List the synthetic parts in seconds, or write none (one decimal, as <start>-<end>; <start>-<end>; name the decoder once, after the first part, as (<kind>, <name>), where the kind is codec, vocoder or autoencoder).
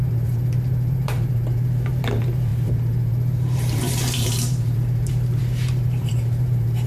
0.0-6.9 (vocoder, BigVGAN v2)